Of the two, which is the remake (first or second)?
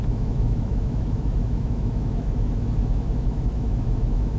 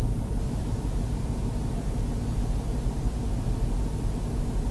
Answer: first